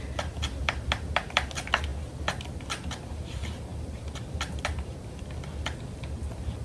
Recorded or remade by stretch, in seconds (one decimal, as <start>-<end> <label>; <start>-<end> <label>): 0.0-6.6 recorded

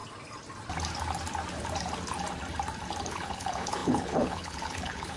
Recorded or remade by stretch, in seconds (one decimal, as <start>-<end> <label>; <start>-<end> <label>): 0.0-3.1 recorded; 3.1-5.2 remade